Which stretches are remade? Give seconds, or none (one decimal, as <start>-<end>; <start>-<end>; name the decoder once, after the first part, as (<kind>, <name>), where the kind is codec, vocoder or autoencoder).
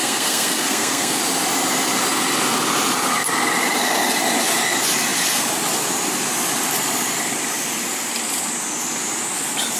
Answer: 0.0-1.2 (codec, SNAC)